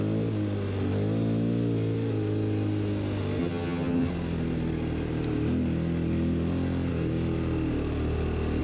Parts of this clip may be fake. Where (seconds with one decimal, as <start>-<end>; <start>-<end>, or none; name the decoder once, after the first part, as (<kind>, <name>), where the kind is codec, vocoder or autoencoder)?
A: 3.4-4.1 (vocoder, HiFi-GAN)

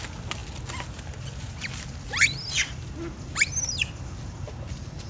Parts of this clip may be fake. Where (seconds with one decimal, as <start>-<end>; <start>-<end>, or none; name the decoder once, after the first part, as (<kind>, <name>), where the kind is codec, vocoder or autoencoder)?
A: none

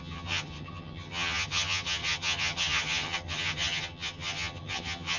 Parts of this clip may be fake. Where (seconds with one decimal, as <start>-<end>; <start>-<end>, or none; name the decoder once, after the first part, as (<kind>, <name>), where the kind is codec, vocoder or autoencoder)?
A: 0.0-5.2 (vocoder, HiFi-GAN)

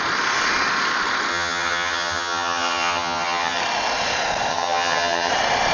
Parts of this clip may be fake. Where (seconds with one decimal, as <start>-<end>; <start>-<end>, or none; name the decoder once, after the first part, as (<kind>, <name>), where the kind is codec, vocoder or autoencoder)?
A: 1.3-3.6 (vocoder, HiFi-GAN); 4.5-5.3

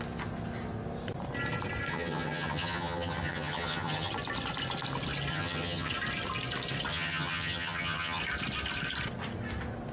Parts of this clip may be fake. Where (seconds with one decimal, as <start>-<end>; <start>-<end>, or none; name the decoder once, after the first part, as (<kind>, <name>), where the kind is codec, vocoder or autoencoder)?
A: 1.9-4.1 (vocoder, HiFi-GAN); 5.3-5.9; 6.9-8.2

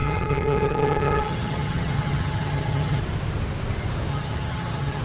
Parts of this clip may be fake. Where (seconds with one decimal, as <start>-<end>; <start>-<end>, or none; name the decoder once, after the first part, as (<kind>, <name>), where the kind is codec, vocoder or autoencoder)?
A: 0.0-3.0 (vocoder, HiFi-GAN); 4.1-5.0